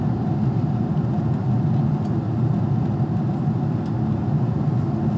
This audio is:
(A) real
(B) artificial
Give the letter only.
A